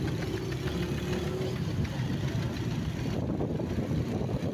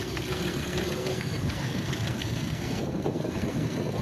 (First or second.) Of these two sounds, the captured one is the first